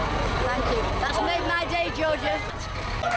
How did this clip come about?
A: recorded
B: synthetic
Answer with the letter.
A